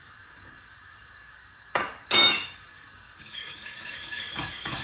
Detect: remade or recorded remade